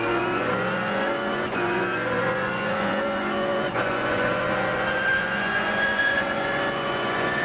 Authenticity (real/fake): fake